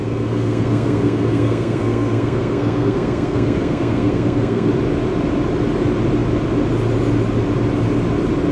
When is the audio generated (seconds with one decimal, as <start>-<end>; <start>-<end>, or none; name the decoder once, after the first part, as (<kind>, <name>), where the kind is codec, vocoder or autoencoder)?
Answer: 0.0-4.7 (codec, SNAC)